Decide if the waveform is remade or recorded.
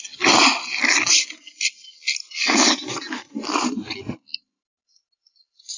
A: recorded